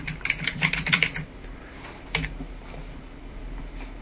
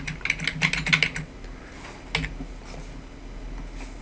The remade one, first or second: first